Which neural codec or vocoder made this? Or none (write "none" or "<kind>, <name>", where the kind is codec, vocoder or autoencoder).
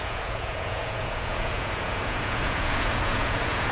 vocoder, Vocos